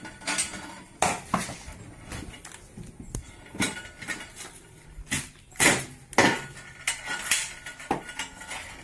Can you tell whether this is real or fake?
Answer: real